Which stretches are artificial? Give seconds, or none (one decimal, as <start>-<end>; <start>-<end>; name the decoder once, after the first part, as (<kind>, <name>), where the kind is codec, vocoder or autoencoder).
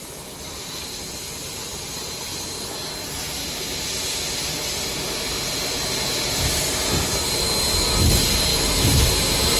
8.5-9.1 (autoencoder, DAC-VAE)